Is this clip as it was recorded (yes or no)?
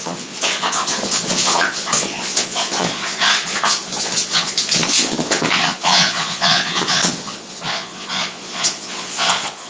no